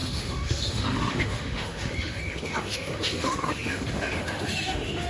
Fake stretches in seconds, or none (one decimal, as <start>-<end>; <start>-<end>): 0.0-5.1